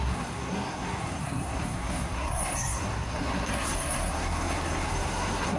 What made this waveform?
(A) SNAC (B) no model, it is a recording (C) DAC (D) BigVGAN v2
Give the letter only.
A